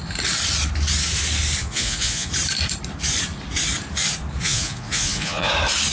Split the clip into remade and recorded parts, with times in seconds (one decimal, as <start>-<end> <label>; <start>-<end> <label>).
0.0-1.6 recorded; 1.6-2.3 remade; 2.3-4.4 recorded; 4.4-5.5 remade; 5.5-5.9 recorded

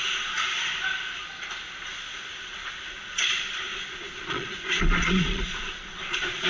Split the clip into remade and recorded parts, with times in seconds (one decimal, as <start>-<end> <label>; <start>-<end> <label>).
0.0-0.7 remade; 0.7-2.4 recorded; 2.4-6.5 remade

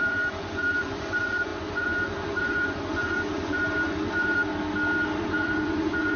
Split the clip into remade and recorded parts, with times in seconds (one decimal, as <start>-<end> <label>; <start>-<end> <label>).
0.0-4.5 remade; 4.5-5.2 recorded; 5.2-6.2 remade

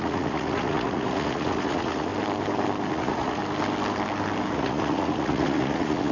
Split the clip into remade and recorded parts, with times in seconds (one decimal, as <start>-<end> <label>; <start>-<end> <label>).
0.0-2.1 remade; 2.1-2.9 recorded; 2.9-3.4 remade; 3.4-4.5 recorded; 4.5-6.1 remade

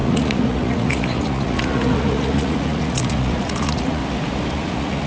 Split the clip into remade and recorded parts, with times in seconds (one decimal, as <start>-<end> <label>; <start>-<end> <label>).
0.0-4.0 remade; 4.0-4.5 recorded; 4.5-5.1 remade